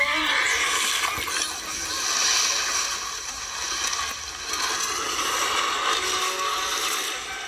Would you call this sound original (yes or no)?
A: yes